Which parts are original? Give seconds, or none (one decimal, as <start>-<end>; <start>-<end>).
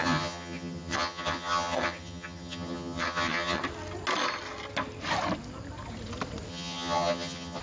3.6-6.5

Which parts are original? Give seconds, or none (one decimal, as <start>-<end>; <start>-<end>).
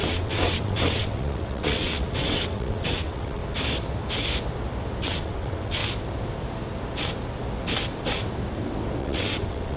3.4-5.0; 5.8-9.0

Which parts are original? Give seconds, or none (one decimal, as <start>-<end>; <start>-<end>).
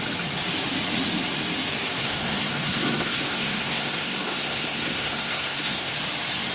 0.0-2.0; 5.9-6.5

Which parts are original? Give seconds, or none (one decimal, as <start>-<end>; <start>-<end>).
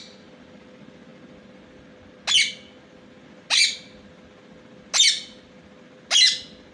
0.0-6.7